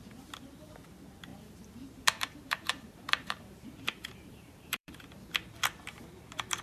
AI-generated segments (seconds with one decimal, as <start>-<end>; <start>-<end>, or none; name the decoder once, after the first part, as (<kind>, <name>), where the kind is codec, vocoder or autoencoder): 1.3-5.3 (vocoder, BigVGAN v2)